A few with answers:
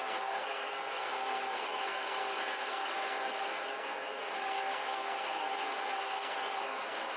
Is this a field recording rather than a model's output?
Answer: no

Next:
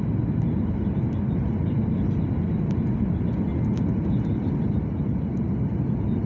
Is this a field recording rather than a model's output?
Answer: yes